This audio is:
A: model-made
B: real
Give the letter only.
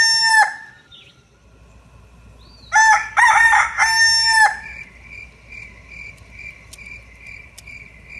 B